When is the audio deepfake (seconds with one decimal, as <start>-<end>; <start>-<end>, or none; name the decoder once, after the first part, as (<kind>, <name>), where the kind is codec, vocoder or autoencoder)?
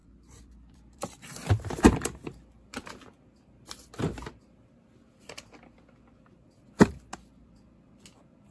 0.0-3.0 (vocoder, BigVGAN v2)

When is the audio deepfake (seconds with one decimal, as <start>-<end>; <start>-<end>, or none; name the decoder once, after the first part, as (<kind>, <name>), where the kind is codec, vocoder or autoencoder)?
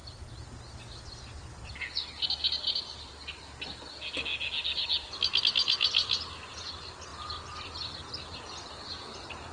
none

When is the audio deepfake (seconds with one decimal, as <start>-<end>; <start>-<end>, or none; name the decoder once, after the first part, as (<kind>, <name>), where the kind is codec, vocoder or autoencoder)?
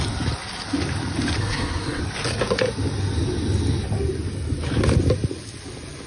1.4-2.0 (codec, SNAC)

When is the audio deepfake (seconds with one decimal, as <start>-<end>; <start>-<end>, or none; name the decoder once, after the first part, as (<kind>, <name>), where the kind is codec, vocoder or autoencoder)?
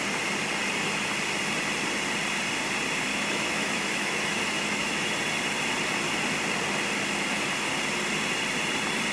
3.1-5.1 (autoencoder, DAC-VAE)